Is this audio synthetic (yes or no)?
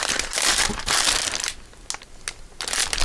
no